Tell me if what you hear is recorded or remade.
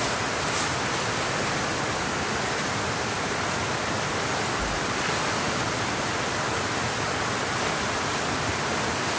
recorded